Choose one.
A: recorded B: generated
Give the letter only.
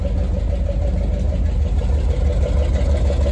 A